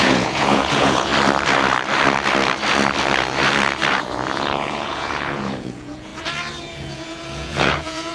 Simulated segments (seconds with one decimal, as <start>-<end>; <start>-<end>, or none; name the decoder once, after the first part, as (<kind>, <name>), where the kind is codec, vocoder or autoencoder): 0.0-1.1 (vocoder, Vocos); 3.9-6.1; 6.6-8.1